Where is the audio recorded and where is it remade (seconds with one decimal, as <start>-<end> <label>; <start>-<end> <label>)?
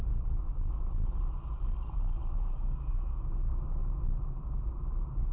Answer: 0.0-3.8 recorded; 3.8-4.8 remade; 4.8-5.3 recorded